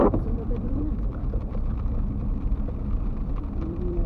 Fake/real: fake